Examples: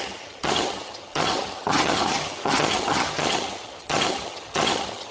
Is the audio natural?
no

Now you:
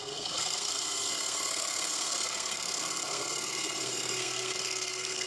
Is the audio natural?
no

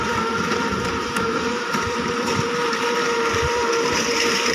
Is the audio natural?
no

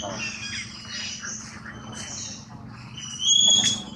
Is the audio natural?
yes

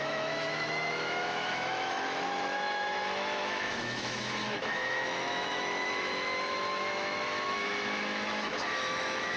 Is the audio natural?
no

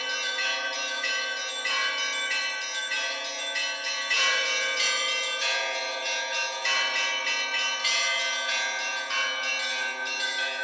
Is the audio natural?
no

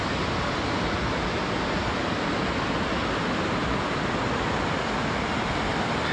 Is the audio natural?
yes